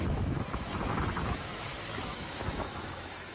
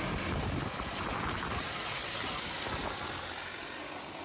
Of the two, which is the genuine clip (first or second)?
second